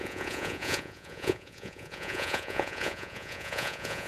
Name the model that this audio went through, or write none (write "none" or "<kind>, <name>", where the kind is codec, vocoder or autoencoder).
vocoder, Vocos